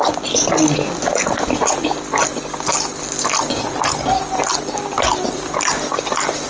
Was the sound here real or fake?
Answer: real